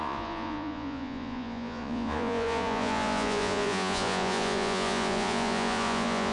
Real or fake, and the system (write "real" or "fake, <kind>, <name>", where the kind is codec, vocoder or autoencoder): fake, vocoder, Vocos